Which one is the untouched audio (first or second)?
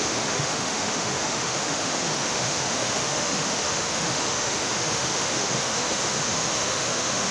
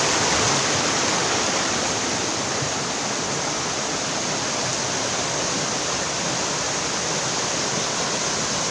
second